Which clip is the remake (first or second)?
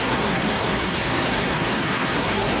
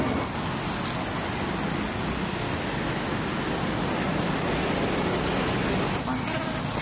first